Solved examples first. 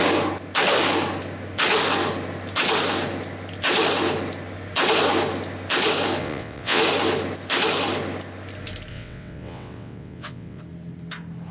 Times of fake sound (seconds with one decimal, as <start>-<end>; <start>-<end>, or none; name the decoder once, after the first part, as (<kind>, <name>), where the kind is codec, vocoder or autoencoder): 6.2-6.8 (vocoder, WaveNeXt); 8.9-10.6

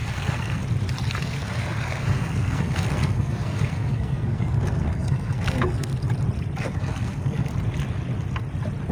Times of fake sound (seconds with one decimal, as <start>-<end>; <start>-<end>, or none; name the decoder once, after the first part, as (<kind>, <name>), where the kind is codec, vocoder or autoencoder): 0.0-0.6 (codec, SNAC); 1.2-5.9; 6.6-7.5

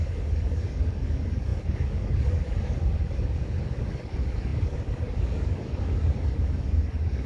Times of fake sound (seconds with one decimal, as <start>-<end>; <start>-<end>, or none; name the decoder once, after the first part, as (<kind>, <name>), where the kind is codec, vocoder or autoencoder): 0.0-7.3 (codec, DAC)